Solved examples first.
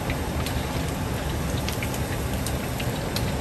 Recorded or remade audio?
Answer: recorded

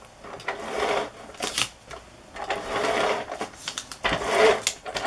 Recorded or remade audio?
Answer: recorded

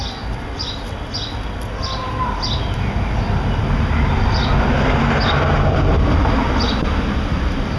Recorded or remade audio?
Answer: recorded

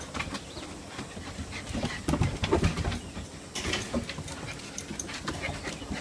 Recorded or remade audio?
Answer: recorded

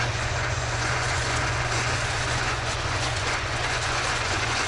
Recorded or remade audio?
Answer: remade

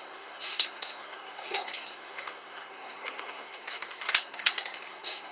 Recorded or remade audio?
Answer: remade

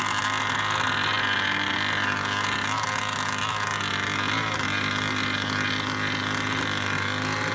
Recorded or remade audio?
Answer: recorded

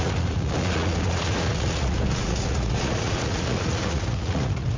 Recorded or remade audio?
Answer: remade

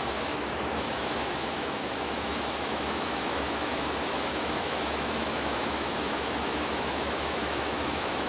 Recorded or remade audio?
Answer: remade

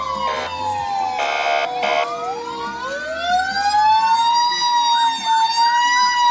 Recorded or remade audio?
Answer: recorded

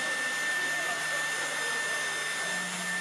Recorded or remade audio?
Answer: recorded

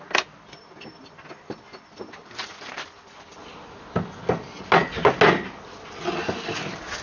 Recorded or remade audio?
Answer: recorded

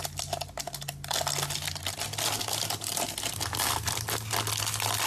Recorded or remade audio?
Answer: recorded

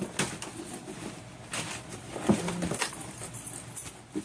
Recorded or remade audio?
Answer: recorded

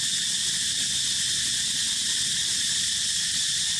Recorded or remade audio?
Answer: recorded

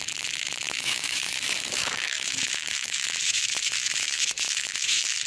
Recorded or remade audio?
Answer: remade